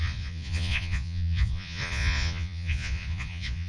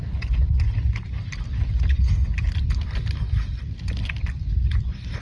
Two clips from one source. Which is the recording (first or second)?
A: second